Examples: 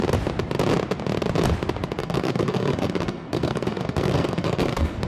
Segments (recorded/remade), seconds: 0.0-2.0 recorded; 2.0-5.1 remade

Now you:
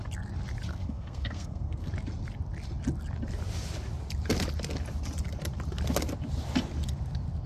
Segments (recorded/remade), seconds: 0.0-0.7 recorded; 0.7-1.9 remade; 1.9-7.5 recorded

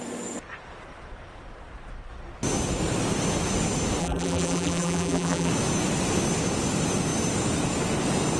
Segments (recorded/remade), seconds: 0.0-4.0 recorded; 4.0-5.5 remade; 5.5-8.4 recorded

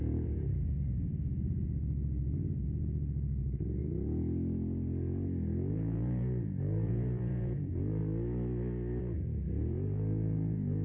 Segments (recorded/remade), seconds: 0.0-3.8 remade; 3.8-5.7 recorded; 5.7-8.0 remade; 8.0-9.0 recorded; 9.0-10.8 remade

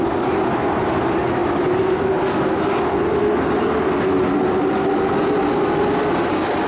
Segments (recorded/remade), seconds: 0.0-1.4 recorded; 1.4-5.4 remade; 5.4-6.7 recorded

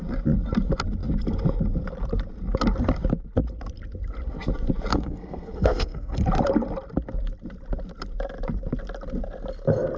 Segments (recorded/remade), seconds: 0.0-4.9 recorded; 4.9-6.2 remade; 6.2-10.0 recorded

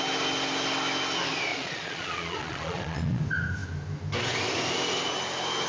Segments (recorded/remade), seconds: 0.0-1.5 recorded; 1.5-3.2 remade; 3.2-5.7 recorded

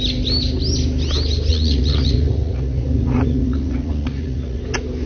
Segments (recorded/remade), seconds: 0.0-1.5 recorded; 1.5-4.6 remade; 4.6-5.1 recorded